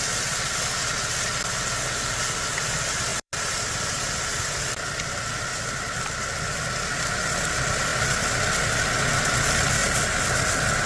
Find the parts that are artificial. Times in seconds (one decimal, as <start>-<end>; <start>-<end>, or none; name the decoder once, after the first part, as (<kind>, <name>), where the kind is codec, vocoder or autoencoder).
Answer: 3.1-4.7 (vocoder, BigVGAN v2); 9.8-10.5